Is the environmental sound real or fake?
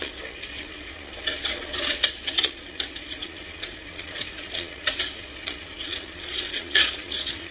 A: fake